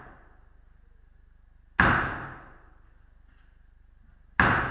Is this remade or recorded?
recorded